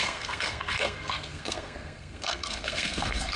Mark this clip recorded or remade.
remade